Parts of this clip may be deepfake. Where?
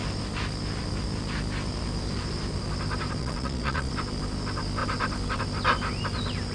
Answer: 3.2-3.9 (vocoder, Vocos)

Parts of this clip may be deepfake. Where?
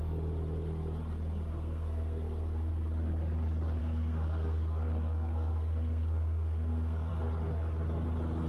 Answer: 1.5-2.7 (codec, SNAC); 3.8-7.1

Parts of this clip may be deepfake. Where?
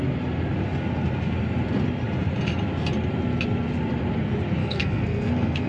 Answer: 4.6-5.7 (codec, SNAC)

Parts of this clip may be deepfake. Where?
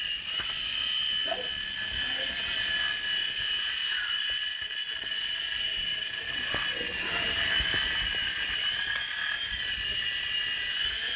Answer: 0.0-4.6 (vocoder, BigVGAN v2); 5.3-11.2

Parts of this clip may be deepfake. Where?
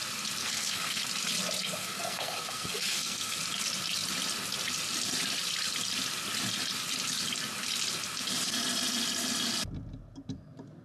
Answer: 0.4-1.0 (codec, SNAC); 1.6-3.4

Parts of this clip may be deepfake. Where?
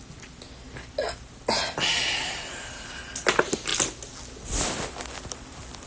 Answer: none